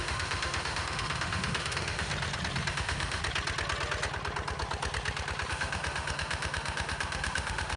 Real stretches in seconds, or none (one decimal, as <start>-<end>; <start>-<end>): 2.1-2.7; 3.2-5.5